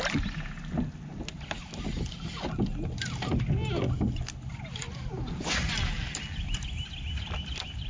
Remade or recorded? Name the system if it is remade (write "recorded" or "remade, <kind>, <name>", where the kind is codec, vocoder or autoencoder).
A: recorded